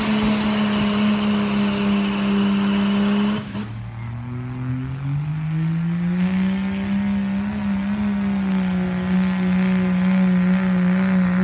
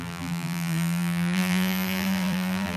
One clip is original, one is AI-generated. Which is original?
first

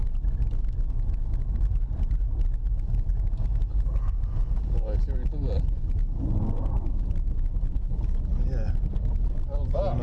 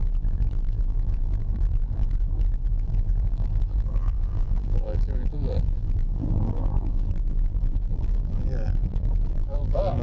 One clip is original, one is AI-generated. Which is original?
first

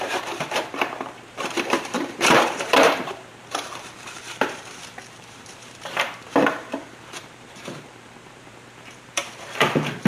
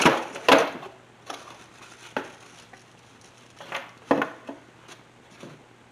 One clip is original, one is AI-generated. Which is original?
second